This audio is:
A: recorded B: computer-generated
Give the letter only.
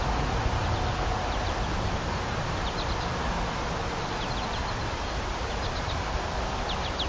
A